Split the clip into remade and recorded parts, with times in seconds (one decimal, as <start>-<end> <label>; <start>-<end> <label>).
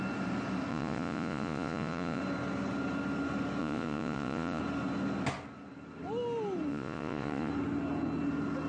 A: 0.0-0.7 recorded; 0.7-2.2 remade; 2.2-3.6 recorded; 3.6-4.6 remade; 4.6-6.7 recorded; 6.7-7.5 remade; 7.5-8.7 recorded